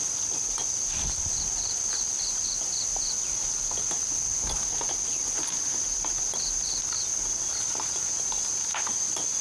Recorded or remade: recorded